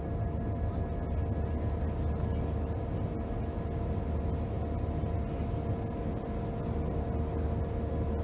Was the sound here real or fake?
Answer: real